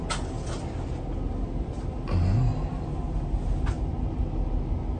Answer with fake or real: real